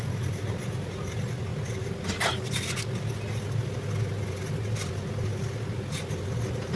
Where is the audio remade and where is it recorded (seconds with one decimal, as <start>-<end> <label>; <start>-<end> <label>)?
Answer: 0.0-6.8 recorded